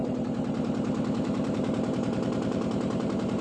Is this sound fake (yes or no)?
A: yes